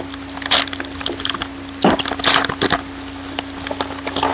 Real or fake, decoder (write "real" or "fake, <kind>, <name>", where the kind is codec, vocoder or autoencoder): real